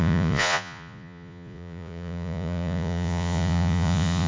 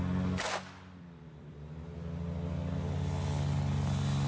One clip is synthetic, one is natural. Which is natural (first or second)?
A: second